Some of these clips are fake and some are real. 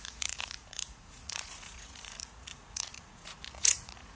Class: fake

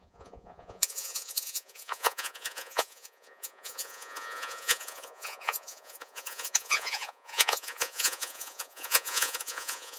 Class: fake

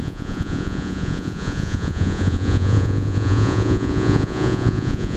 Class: fake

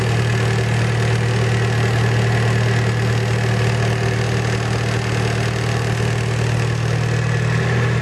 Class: real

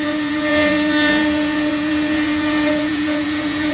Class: fake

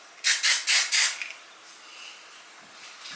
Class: real